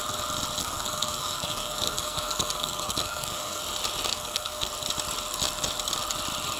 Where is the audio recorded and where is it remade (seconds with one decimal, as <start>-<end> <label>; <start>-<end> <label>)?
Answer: 0.0-0.6 recorded; 0.6-3.6 remade; 3.6-4.1 recorded; 4.1-4.7 remade; 4.7-6.6 recorded